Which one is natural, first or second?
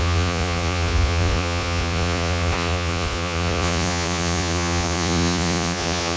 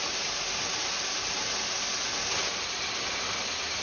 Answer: second